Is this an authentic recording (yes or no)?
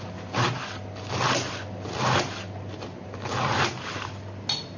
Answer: yes